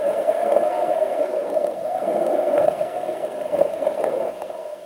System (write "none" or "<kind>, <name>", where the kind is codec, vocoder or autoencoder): codec, SNAC